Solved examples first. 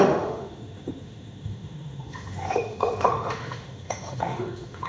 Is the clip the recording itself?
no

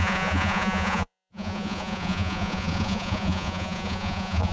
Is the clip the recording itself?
no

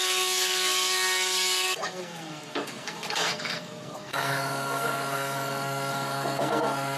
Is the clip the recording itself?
no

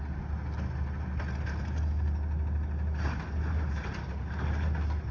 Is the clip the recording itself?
yes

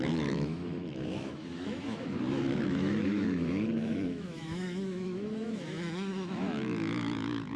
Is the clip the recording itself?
no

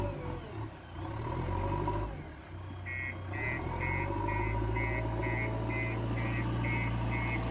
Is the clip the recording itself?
yes